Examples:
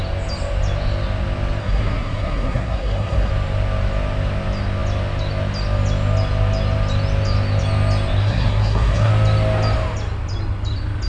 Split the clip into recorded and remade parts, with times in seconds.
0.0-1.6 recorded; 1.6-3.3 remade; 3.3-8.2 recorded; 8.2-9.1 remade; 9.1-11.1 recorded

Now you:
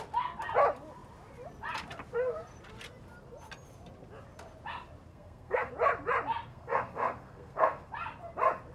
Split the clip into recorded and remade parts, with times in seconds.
0.0-5.1 recorded; 5.1-5.7 remade; 5.7-6.5 recorded; 6.5-7.9 remade; 7.9-8.7 recorded

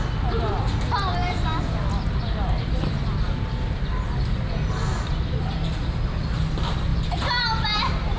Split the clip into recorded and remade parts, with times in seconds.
0.0-8.2 recorded

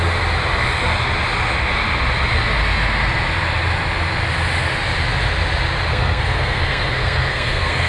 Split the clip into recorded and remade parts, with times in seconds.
0.0-5.9 recorded; 5.9-7.9 remade

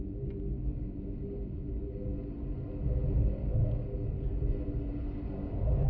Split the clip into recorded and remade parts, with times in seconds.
0.0-5.9 recorded

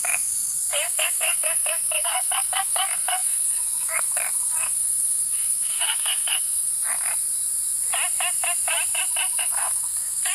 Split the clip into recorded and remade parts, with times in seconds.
0.0-7.1 remade; 7.1-9.4 recorded; 9.4-10.3 remade